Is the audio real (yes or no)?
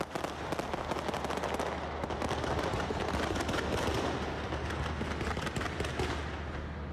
yes